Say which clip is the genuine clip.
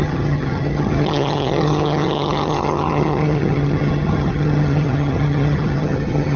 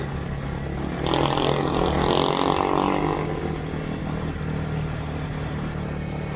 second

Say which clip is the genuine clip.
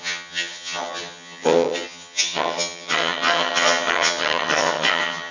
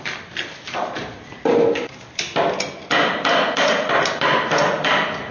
second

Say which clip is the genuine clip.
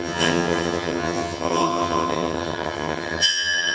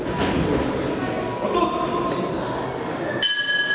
second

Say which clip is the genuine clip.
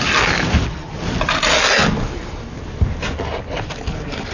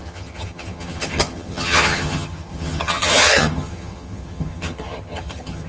first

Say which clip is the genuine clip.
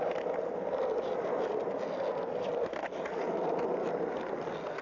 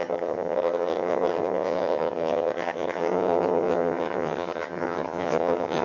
first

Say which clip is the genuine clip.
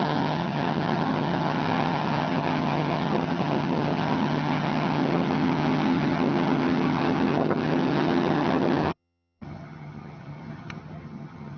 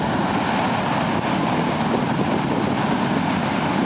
second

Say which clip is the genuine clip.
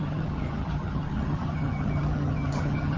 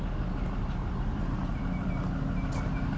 second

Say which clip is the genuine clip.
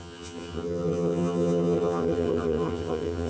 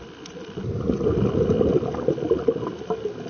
second